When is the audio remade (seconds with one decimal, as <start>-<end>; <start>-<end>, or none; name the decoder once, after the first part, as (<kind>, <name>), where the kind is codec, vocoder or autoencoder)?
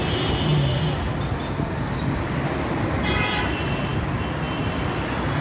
none